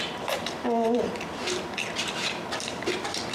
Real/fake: fake